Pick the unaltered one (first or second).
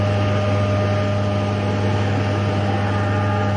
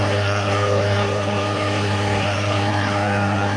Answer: first